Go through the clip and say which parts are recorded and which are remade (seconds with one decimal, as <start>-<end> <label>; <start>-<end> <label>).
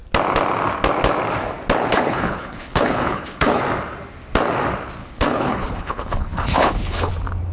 0.0-1.9 recorded; 1.9-3.6 remade; 3.6-5.0 recorded; 5.0-7.1 remade; 7.1-7.5 recorded